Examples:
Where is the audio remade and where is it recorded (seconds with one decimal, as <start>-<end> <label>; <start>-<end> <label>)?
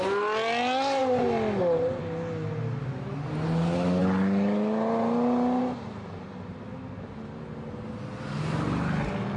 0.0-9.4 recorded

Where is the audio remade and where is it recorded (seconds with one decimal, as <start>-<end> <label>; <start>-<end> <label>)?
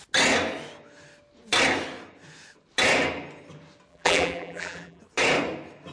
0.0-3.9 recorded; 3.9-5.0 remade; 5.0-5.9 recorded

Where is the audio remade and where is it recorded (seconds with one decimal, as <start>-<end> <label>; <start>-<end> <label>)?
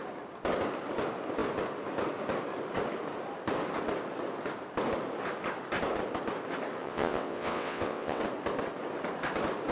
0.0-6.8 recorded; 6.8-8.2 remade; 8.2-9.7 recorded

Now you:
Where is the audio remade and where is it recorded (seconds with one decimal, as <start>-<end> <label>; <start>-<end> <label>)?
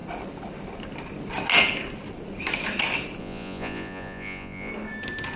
0.0-3.2 recorded; 3.2-4.7 remade; 4.7-5.4 recorded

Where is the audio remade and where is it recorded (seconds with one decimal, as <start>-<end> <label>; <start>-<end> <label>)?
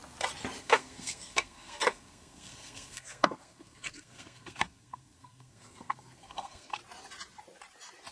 0.0-0.6 recorded; 0.6-6.8 remade; 6.8-8.1 recorded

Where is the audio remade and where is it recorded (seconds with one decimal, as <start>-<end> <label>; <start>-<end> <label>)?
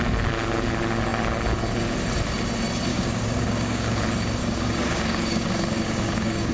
0.0-2.9 recorded; 2.9-4.0 remade; 4.0-4.4 recorded; 4.4-6.5 remade